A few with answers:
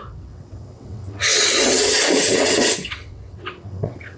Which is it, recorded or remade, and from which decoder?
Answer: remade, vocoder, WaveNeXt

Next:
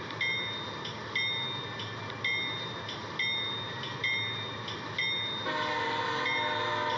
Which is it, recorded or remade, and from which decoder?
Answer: recorded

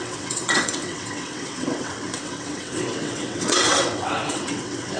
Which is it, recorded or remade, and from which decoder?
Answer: remade, vocoder, WaveNeXt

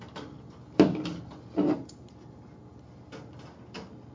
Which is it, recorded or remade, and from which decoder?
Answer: recorded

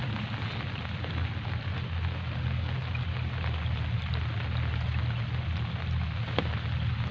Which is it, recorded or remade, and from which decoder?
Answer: recorded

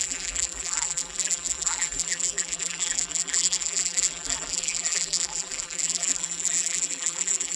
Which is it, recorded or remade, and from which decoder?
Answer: remade, vocoder, BigVGAN v2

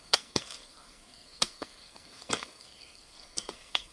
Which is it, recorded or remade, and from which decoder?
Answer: remade, codec, SNAC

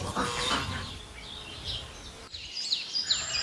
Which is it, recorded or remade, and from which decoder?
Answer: recorded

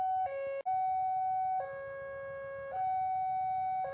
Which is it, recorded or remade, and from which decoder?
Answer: recorded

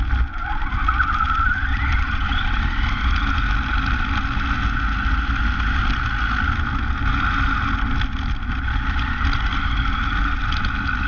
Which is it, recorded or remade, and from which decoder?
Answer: recorded